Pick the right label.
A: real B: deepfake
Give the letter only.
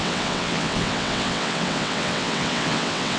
B